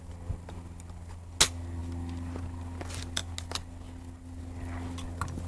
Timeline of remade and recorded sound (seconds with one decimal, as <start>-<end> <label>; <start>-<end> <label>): 0.0-5.5 recorded